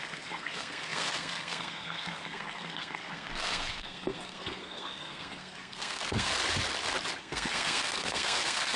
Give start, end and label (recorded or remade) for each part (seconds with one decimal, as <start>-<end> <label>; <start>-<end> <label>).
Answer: 0.0-6.3 remade; 6.3-7.2 recorded; 7.2-8.8 remade